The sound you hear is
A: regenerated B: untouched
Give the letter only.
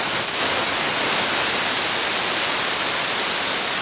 B